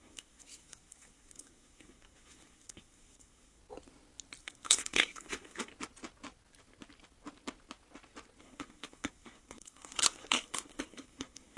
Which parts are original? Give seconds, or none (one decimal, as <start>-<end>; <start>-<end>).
3.6-4.4; 5.7-8.4